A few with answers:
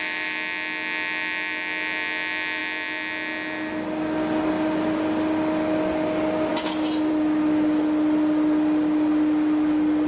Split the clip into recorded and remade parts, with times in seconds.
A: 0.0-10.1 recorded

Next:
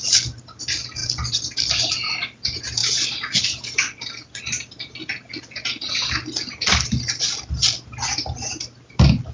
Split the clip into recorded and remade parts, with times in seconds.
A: 0.0-9.3 recorded